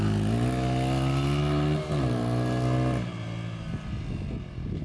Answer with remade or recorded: recorded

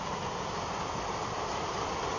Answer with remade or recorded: recorded